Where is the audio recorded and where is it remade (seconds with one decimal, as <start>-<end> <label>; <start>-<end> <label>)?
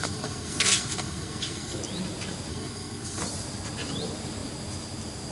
0.0-1.8 remade; 1.8-2.5 recorded; 2.5-3.2 remade; 3.2-5.3 recorded